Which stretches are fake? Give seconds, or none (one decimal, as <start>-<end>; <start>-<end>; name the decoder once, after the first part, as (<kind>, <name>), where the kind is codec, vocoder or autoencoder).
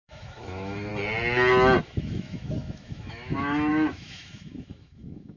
0.0-0.9 (autoencoder, DAC-VAE); 1.8-5.4